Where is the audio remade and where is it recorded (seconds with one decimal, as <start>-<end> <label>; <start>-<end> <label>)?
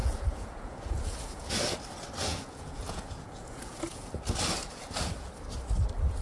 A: 0.0-1.5 remade; 1.5-2.3 recorded; 2.3-4.1 remade; 4.1-4.6 recorded; 4.6-5.3 remade; 5.3-6.2 recorded